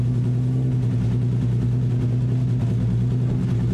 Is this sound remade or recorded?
recorded